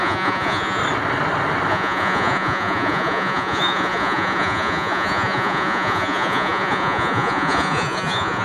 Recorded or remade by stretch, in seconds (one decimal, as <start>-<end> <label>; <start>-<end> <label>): 0.0-0.8 remade; 0.8-1.7 recorded; 1.7-8.4 remade